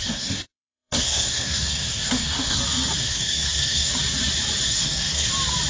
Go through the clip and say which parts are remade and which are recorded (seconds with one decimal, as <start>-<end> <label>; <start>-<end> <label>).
0.0-2.6 remade; 2.6-3.0 recorded; 3.0-3.9 remade; 3.9-4.7 recorded; 4.7-5.3 remade; 5.3-5.7 recorded